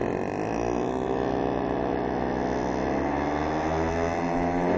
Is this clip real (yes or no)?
yes